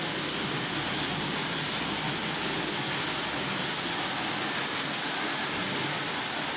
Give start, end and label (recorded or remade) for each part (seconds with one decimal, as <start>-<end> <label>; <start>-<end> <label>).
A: 0.0-6.6 recorded